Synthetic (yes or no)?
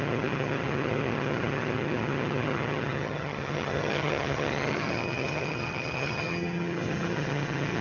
yes